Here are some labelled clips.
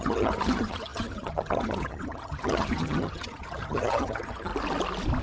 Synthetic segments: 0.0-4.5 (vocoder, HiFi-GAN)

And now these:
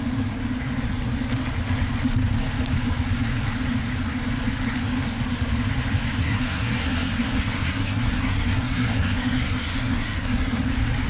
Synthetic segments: 6.2-10.7 (codec, SNAC)

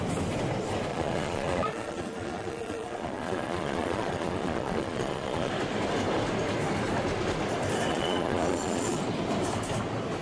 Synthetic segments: 0.9-5.5 (vocoder, Vocos); 7.9-9.0

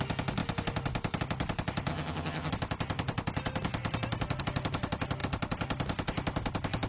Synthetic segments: 1.9-2.5 (vocoder, HiFi-GAN)

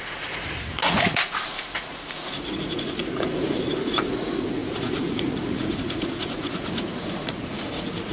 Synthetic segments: 0.0-8.1 (vocoder, Vocos)

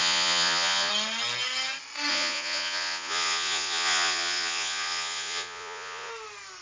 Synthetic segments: 0.0-0.9 (vocoder, Vocos); 2.1-6.1

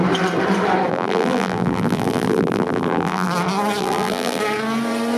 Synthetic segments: 0.9-3.3 (vocoder, BigVGAN v2); 3.8-4.4

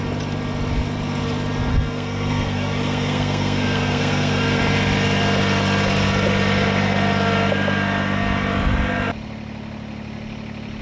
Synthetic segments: 1.7-4.6 (codec, SNAC)